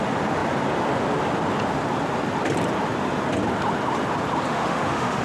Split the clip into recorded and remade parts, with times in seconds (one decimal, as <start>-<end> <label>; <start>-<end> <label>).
0.0-4.5 recorded; 4.5-5.2 remade